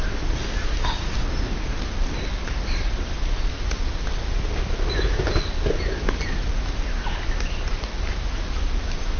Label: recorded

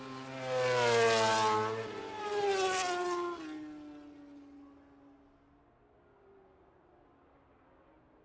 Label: recorded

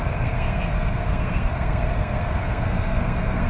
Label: remade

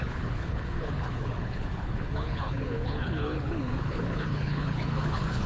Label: remade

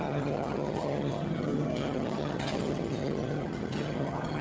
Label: remade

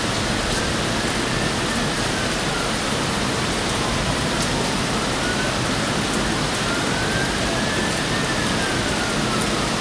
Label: recorded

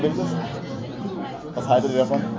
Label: recorded